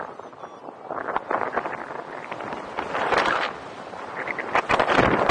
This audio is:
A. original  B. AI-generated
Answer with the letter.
A